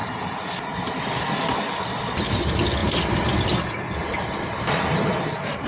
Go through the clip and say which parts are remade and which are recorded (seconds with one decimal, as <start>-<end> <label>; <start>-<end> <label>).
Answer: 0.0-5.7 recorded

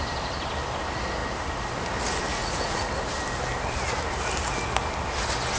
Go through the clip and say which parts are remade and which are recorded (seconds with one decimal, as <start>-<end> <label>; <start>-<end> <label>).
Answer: 0.0-2.3 recorded; 2.3-2.9 remade; 2.9-5.6 recorded

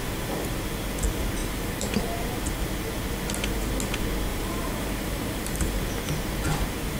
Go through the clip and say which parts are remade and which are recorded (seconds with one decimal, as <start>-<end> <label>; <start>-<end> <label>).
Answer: 0.0-1.4 recorded; 1.4-2.1 remade; 2.1-4.3 recorded; 4.3-5.9 remade; 5.9-7.0 recorded

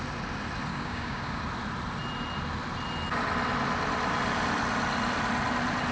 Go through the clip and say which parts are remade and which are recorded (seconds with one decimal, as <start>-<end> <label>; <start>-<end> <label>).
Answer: 0.0-0.7 recorded; 0.7-1.4 remade; 1.4-5.9 recorded

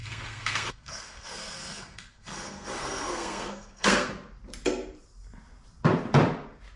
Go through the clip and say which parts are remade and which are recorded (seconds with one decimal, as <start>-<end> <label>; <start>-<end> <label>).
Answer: 0.0-4.1 remade; 4.1-6.8 recorded